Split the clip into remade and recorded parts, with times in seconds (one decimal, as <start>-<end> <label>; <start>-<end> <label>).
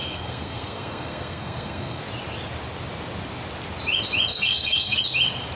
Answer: 0.0-2.0 remade; 2.0-4.3 recorded; 4.3-5.0 remade; 5.0-5.5 recorded